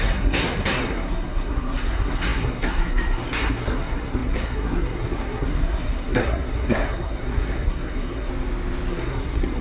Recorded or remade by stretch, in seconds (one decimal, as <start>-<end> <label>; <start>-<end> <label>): 0.0-8.3 remade; 8.3-8.9 recorded; 8.9-9.6 remade